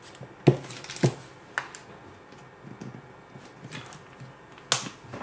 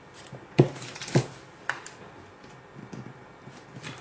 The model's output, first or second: second